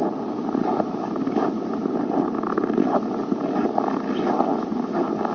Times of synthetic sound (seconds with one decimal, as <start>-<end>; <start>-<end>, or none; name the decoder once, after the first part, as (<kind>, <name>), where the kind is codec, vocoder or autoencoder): 0.4-3.6 (vocoder, BigVGAN v2)